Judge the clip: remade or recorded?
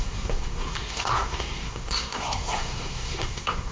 remade